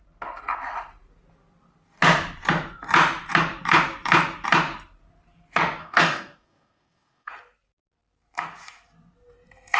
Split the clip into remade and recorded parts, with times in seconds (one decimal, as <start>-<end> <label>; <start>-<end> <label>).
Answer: 0.0-5.8 recorded; 5.8-7.3 remade; 7.3-9.8 recorded